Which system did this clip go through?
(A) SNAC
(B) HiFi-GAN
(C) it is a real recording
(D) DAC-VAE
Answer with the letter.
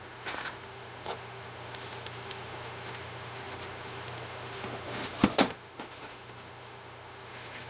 D